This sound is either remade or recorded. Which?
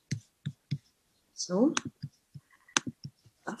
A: recorded